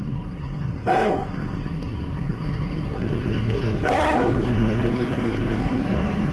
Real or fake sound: fake